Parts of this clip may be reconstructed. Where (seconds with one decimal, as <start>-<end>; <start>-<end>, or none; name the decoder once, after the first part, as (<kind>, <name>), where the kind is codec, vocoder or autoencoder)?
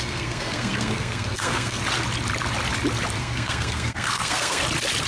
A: 0.0-1.8 (codec, SNAC); 3.2-4.6